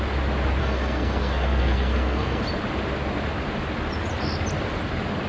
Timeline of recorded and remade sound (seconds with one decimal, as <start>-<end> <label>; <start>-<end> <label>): 0.0-0.6 recorded; 0.6-2.4 remade; 2.4-5.3 recorded